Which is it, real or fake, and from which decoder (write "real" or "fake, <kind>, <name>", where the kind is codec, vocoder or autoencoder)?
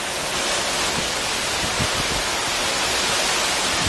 real